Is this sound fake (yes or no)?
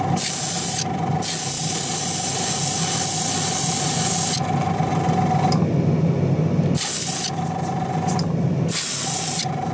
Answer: no